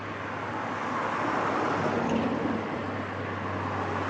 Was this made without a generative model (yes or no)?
yes